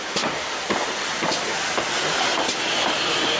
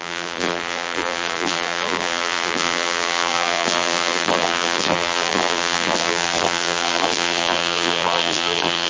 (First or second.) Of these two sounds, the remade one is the second